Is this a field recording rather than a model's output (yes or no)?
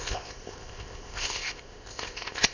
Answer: no